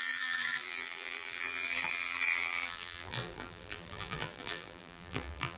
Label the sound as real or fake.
fake